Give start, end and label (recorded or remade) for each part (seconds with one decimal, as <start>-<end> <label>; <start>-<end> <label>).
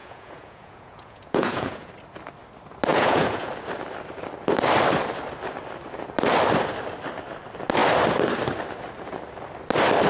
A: 0.0-1.9 remade; 1.9-2.9 recorded; 2.9-3.5 remade; 3.5-10.1 recorded